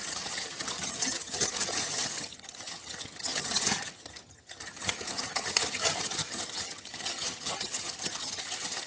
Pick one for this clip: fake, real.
fake